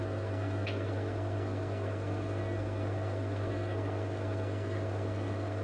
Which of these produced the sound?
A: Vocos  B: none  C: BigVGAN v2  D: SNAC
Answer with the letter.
D